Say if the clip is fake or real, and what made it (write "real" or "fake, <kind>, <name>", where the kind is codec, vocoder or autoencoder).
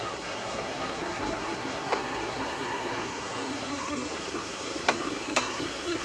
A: fake, codec, SNAC